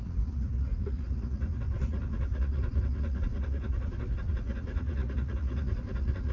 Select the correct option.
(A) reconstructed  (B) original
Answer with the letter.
A